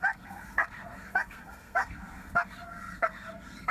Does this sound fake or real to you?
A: fake